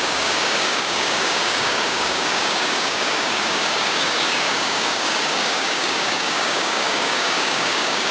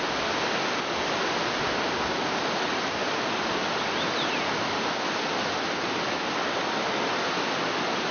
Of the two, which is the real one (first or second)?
second